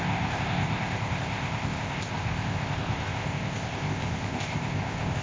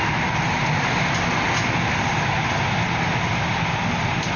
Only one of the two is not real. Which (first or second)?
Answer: first